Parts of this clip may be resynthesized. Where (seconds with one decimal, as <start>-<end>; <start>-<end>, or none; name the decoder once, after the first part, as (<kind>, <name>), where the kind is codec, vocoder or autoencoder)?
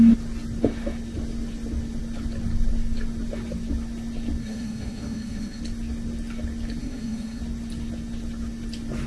4.4-5.6 (codec, SNAC); 6.8-7.4